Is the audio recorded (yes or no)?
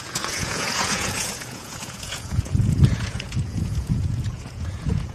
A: no